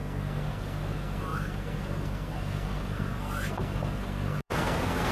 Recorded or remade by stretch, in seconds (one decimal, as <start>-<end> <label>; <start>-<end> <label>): 0.0-5.1 remade